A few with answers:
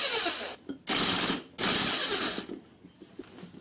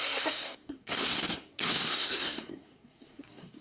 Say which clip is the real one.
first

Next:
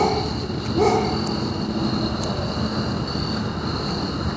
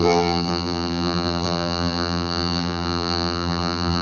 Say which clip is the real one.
first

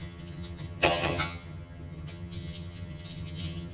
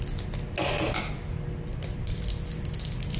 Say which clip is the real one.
second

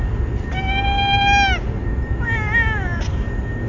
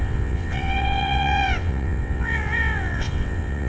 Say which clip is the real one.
first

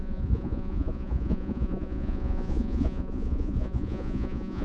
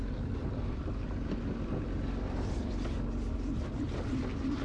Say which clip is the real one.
second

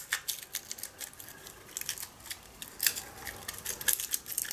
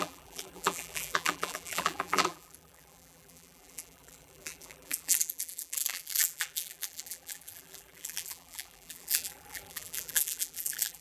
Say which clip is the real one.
first